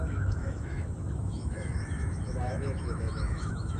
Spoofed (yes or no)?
yes